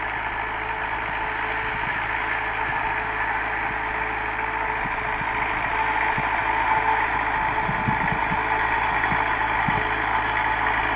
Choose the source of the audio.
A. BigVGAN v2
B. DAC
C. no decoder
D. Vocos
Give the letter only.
C